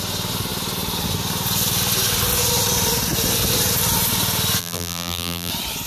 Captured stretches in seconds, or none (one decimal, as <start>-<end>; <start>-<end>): 0.0-4.6; 5.5-5.9